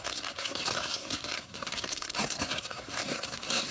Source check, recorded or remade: remade